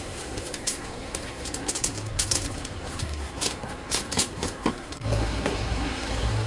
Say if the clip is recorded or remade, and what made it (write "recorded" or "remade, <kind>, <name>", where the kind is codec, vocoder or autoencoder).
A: remade, codec, SNAC